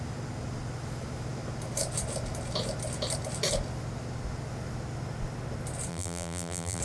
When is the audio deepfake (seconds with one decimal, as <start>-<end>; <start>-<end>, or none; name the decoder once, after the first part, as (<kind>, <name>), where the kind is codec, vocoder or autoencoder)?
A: 5.9-6.8 (vocoder, BigVGAN v2)